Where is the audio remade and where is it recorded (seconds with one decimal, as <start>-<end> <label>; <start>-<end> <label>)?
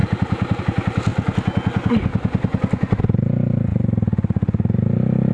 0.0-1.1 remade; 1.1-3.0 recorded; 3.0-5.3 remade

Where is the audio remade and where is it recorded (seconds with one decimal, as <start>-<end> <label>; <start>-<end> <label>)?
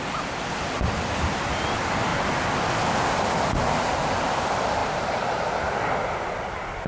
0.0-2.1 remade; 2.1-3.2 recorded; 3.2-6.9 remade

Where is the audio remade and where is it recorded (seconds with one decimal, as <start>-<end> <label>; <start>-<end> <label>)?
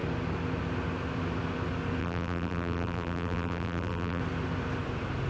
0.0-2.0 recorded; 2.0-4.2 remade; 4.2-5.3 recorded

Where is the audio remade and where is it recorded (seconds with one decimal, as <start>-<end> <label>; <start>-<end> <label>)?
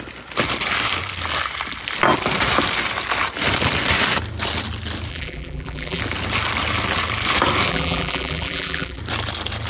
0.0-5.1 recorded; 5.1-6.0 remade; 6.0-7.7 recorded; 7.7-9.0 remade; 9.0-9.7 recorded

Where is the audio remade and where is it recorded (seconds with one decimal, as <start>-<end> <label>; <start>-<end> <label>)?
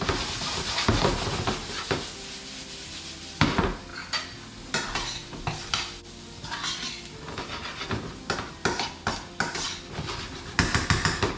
0.0-11.4 recorded